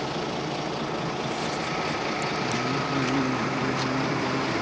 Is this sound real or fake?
fake